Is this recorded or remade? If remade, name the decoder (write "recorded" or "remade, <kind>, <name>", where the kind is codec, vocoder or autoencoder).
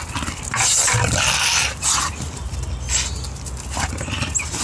recorded